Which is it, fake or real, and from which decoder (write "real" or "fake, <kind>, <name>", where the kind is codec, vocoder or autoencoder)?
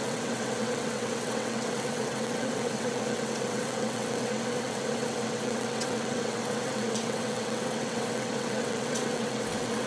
fake, vocoder, WaveNeXt